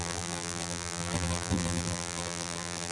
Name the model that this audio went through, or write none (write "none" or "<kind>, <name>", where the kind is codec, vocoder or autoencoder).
vocoder, BigVGAN v2